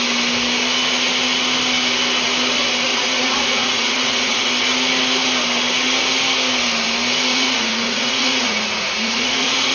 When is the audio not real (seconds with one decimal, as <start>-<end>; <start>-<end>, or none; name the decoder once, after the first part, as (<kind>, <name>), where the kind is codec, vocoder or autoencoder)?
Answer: 2.9-4.5 (vocoder, Vocos); 7.3-9.7